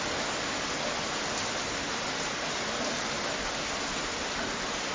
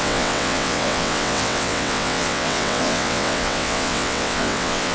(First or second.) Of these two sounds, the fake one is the second